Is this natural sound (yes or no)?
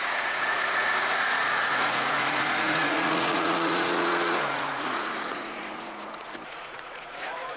no